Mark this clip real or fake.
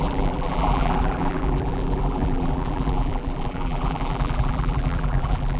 fake